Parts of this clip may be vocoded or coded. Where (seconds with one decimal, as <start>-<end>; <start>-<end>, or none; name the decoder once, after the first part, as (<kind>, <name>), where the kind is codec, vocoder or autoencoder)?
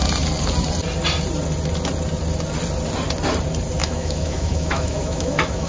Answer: 3.8-5.7 (autoencoder, DAC-VAE)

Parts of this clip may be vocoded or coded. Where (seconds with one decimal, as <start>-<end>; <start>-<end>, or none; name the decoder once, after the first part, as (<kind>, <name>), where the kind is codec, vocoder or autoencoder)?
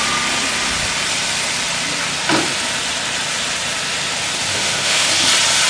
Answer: 4.5-5.1 (autoencoder, DAC-VAE)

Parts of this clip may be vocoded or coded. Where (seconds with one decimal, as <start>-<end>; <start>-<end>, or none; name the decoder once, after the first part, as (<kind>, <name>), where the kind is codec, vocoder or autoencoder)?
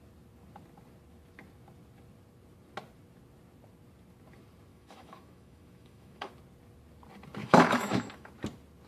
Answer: 4.7-6.3 (autoencoder, DAC-VAE); 7.4-8.3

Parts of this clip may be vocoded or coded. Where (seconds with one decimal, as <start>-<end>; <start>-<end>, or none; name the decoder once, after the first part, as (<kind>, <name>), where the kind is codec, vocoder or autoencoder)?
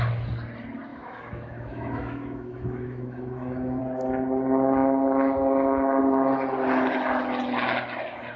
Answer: 0.9-3.8 (autoencoder, DAC-VAE)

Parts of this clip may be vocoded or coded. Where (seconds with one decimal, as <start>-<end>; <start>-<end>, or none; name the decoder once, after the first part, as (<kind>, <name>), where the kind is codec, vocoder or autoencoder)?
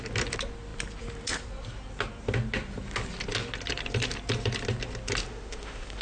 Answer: 5.2-6.0 (autoencoder, DAC-VAE)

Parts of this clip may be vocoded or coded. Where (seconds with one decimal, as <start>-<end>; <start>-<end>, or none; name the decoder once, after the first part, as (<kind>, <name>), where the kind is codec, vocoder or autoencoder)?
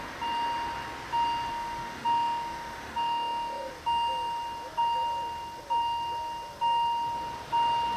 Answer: 1.5-3.7 (autoencoder, DAC-VAE)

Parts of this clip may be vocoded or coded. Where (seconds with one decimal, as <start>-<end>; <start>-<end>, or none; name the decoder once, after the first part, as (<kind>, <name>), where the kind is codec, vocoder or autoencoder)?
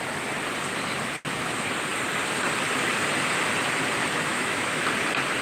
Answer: 4.3-4.8 (autoencoder, DAC-VAE)